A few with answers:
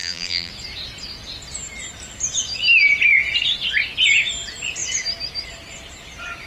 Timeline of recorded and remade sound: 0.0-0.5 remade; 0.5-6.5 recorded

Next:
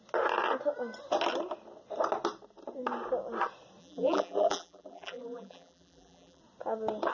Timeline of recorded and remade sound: 0.0-3.8 recorded; 3.8-6.4 remade; 6.4-7.1 recorded

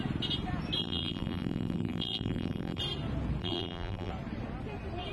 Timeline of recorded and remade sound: 0.0-0.8 recorded; 0.8-2.8 remade; 2.8-3.4 recorded; 3.4-4.1 remade; 4.1-5.1 recorded

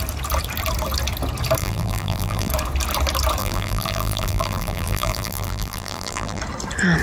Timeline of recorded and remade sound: 0.0-1.6 recorded; 1.6-2.5 remade; 2.5-3.4 recorded; 3.4-6.4 remade; 6.4-7.0 recorded